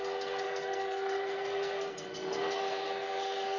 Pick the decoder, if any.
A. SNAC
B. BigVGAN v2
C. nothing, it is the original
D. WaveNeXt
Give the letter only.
A